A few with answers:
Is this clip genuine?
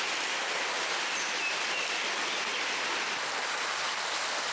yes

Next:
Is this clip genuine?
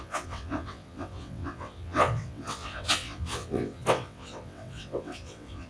no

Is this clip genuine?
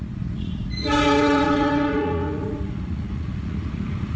no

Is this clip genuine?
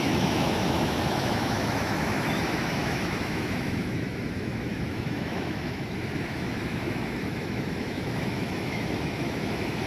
no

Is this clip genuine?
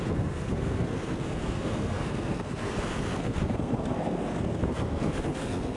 no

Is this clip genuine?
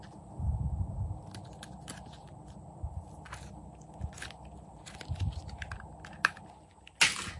yes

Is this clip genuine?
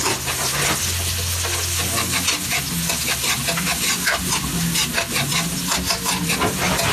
yes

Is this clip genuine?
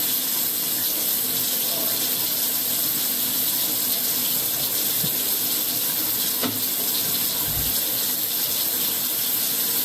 yes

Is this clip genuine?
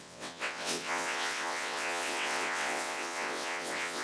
no